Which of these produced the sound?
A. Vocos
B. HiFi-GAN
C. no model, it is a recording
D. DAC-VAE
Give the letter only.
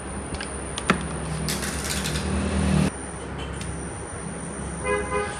C